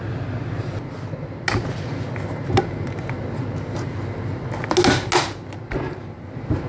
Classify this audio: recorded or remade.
recorded